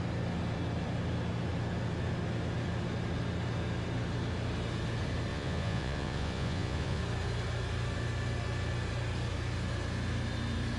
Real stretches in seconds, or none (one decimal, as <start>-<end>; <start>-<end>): 0.0-5.3; 7.0-10.8